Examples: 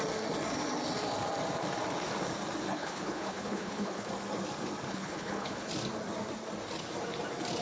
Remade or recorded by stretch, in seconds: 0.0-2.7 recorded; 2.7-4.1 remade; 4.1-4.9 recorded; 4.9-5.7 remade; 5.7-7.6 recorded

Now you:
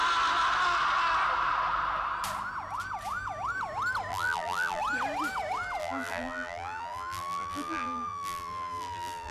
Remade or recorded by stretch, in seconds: 0.0-4.1 recorded; 4.1-4.8 remade; 4.8-5.8 recorded; 5.8-9.3 remade

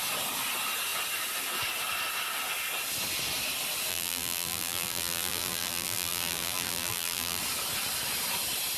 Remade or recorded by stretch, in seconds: 0.0-3.9 recorded; 3.9-7.4 remade; 7.4-8.8 recorded

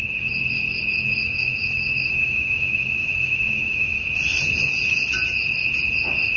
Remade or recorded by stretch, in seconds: 0.0-1.2 recorded; 1.2-4.1 remade; 4.1-6.4 recorded

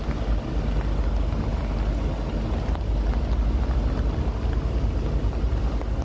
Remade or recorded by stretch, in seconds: 0.0-6.0 recorded

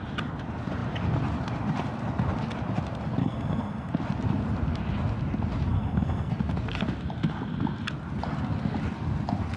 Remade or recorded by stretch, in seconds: 0.0-3.2 recorded; 3.2-3.9 remade; 3.9-5.7 recorded; 5.7-6.3 remade; 6.3-9.6 recorded

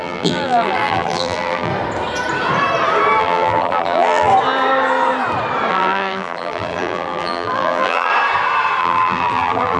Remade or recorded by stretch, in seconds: 0.0-1.7 remade; 1.7-3.2 recorded; 3.2-4.3 remade; 4.3-5.7 recorded; 5.7-8.1 remade; 8.1-8.8 recorded; 8.8-9.8 remade